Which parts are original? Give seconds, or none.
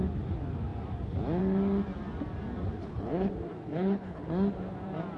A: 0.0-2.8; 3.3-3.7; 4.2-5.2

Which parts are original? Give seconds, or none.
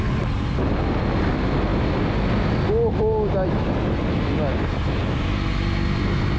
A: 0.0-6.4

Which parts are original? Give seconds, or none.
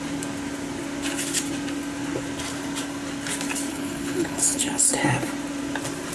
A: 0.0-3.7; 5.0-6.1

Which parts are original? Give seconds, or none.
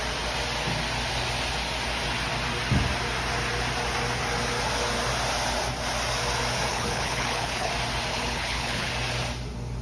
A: 0.0-6.7; 7.7-8.1; 8.9-9.8